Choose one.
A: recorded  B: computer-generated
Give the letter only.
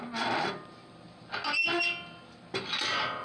A